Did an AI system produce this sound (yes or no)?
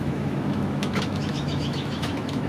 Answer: yes